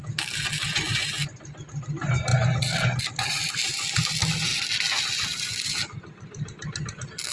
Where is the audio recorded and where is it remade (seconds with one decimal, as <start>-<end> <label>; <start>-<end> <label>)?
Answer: 0.0-7.3 recorded